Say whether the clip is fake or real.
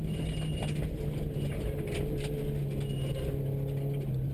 real